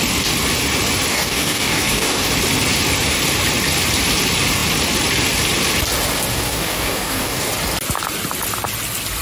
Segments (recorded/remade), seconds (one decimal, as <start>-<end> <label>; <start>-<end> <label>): 0.0-1.1 recorded; 1.1-2.3 remade; 2.3-6.3 recorded; 6.3-7.5 remade; 7.5-9.2 recorded